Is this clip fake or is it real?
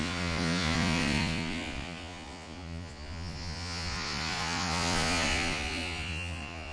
fake